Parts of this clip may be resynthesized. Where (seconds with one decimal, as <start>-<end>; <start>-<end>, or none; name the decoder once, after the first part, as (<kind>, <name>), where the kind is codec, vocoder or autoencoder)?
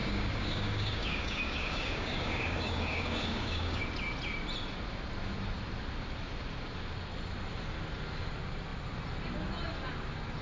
0.0-3.8 (codec, DAC)